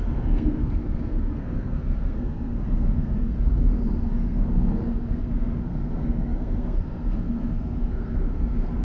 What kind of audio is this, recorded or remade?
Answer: remade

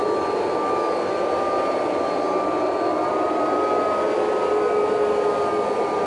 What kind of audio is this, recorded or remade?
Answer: recorded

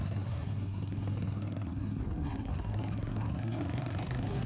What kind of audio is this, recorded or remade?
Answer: remade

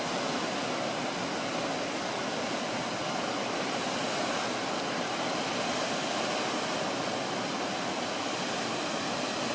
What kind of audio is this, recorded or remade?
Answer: recorded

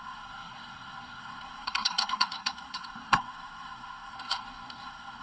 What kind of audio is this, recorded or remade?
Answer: remade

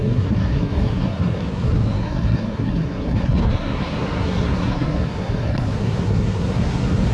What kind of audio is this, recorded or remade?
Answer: remade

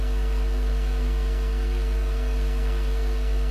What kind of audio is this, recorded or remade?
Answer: remade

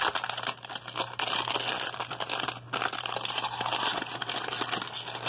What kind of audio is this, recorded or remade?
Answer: recorded